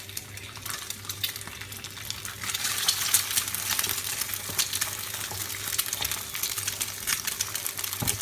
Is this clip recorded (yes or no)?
yes